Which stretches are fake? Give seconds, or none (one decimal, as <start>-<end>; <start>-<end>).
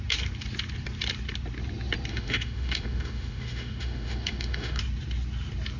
2.1-4.8